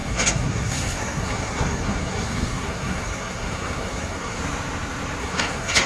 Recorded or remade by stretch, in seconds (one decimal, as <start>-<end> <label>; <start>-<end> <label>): 0.0-4.4 remade; 4.4-5.2 recorded; 5.2-5.9 remade